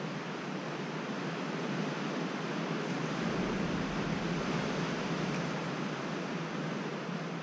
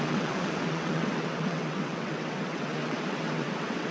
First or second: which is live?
first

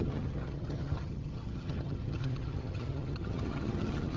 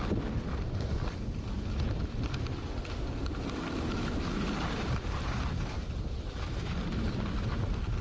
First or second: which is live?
second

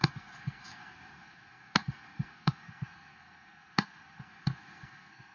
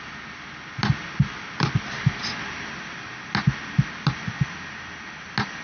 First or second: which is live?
second